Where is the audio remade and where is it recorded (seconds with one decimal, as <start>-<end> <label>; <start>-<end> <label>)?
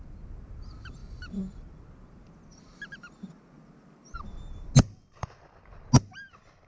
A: 0.0-6.7 recorded